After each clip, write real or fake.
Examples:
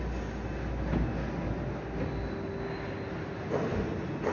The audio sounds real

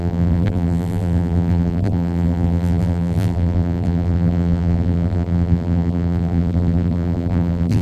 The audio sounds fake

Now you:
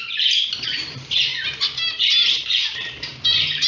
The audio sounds fake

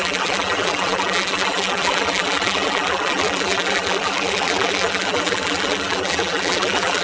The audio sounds fake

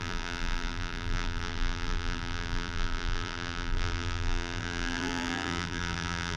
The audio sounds fake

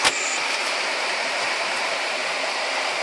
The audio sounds fake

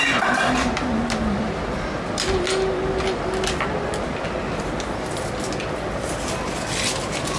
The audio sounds real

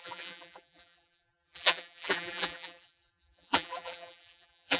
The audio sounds fake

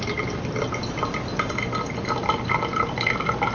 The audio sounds real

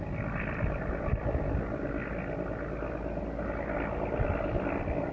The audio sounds real